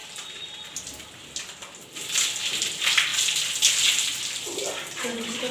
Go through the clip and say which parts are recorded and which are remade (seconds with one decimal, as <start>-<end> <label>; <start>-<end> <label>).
0.0-0.8 remade; 0.8-5.5 recorded